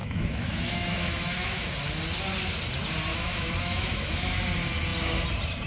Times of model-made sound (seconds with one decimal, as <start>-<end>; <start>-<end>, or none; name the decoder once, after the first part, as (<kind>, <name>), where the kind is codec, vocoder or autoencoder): 0.0-1.7 (autoencoder, DAC-VAE); 3.1-4.4